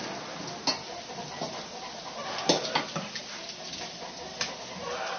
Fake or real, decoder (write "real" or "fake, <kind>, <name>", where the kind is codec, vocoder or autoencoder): real